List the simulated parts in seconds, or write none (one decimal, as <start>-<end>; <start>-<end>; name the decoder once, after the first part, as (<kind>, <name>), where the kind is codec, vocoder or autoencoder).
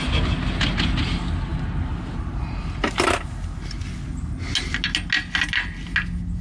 1.5-3.8 (vocoder, BigVGAN v2)